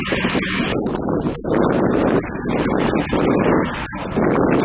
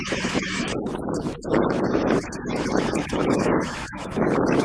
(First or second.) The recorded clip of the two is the first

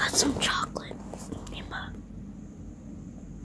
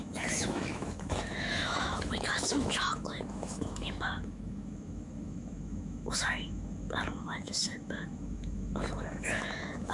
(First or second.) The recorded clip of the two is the first